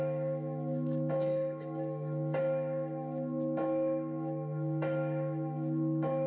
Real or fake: fake